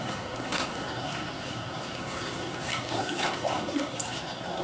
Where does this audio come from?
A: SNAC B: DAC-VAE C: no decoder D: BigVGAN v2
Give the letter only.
A